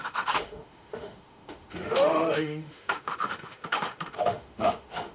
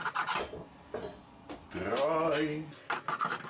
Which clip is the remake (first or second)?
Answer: first